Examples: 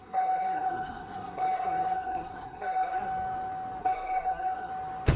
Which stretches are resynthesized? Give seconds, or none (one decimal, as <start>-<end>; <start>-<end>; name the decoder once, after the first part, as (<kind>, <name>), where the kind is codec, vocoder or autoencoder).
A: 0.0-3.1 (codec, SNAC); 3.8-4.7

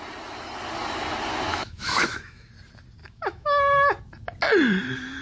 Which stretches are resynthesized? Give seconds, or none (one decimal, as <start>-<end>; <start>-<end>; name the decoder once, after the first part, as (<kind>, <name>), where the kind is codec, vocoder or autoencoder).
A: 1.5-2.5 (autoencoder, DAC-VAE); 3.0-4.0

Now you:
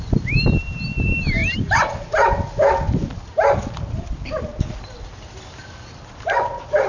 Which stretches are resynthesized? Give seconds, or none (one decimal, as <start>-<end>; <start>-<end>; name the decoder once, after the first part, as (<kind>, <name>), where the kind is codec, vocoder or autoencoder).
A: none

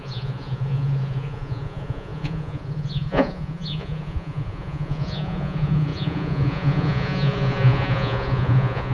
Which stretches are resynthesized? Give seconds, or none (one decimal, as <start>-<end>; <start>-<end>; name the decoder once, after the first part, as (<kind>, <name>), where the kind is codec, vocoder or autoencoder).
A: 0.0-8.9 (vocoder, Vocos)

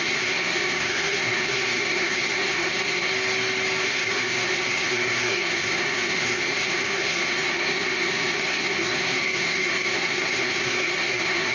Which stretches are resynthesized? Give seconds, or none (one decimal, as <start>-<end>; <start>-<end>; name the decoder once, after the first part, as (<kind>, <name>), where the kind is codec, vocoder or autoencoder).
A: 0.0-3.1 (codec, SNAC); 3.8-11.5

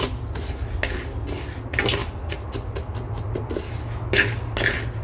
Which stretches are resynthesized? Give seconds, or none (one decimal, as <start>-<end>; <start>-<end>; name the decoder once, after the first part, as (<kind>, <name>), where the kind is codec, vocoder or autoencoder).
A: none

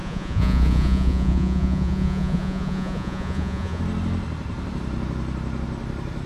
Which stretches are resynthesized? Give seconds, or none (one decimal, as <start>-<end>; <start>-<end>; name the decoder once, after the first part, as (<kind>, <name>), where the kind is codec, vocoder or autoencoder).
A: 0.0-3.8 (vocoder, Vocos)

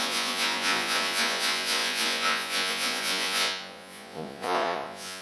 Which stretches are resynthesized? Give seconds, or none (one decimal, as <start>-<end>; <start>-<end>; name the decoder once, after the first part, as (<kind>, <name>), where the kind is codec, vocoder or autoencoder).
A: 0.0-5.2 (vocoder, Vocos)